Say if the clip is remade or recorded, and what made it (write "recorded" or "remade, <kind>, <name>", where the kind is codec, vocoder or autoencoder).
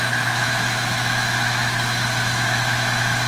remade, autoencoder, DAC-VAE